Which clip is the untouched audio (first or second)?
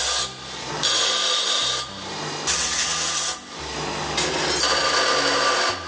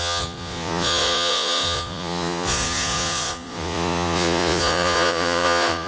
first